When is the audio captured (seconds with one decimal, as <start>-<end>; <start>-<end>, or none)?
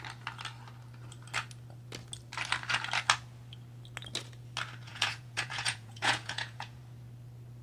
0.0-4.9; 6.8-7.6